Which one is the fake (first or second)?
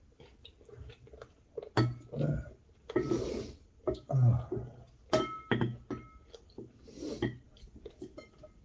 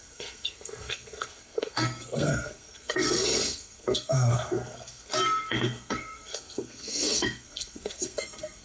second